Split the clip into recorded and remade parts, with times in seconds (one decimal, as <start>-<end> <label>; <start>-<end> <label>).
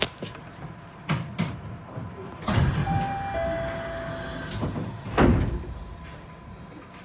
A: 0.0-2.8 remade; 2.8-5.7 recorded; 5.7-7.0 remade